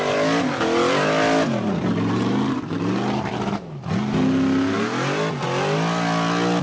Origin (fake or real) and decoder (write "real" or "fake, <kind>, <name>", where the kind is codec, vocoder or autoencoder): real